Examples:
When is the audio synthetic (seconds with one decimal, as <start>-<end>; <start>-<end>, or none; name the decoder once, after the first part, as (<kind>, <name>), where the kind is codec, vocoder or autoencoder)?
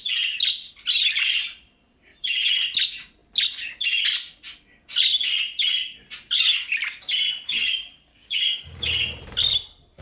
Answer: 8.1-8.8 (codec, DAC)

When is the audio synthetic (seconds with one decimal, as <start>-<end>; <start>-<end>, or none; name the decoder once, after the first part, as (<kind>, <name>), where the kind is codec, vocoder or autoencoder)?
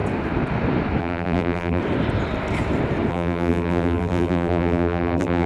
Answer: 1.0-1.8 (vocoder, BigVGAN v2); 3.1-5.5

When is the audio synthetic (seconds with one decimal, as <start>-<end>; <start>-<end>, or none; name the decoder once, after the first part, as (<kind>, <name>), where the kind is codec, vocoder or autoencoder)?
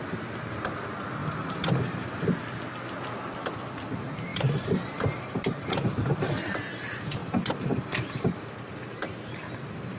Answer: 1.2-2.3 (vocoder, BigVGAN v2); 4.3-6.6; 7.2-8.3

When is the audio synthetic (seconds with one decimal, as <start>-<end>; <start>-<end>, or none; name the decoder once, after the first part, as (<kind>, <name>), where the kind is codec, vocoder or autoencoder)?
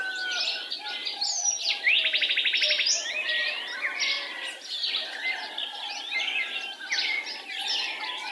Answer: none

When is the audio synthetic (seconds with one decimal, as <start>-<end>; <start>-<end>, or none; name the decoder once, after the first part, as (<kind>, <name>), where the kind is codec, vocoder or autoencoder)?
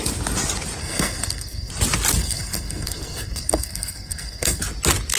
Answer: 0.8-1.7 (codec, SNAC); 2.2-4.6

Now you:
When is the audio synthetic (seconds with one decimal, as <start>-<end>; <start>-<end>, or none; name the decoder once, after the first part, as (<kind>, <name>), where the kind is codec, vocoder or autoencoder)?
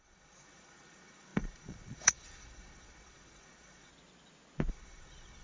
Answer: 0.0-3.9 (vocoder, Vocos); 4.7-5.4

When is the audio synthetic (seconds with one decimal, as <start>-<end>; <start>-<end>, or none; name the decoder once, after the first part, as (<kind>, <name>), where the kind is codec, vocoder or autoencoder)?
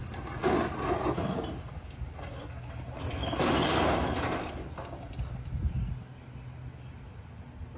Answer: 3.2-4.9 (vocoder, BigVGAN v2)